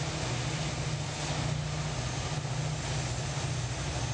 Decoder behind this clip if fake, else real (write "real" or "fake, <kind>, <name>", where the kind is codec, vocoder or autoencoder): real